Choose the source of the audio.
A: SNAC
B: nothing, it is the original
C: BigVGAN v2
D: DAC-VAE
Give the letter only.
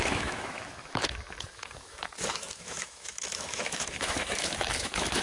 D